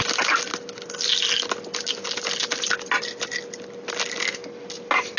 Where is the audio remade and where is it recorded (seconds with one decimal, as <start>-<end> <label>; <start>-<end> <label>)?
0.0-5.2 recorded